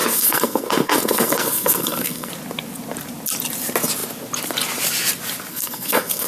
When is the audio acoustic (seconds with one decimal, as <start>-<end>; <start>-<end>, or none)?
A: 2.3-5.5